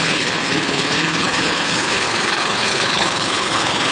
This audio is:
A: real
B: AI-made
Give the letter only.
B